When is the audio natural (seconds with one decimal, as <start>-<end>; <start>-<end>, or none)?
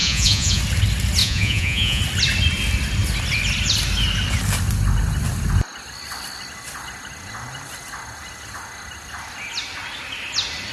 0.6-1.2; 2.0-10.7